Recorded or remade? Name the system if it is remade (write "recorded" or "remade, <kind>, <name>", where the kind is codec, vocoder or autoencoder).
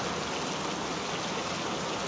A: recorded